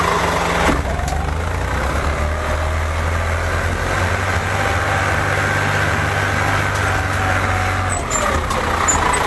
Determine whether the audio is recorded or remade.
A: recorded